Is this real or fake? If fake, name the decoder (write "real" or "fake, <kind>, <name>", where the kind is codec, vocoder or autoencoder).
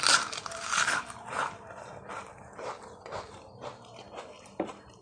fake, vocoder, BigVGAN v2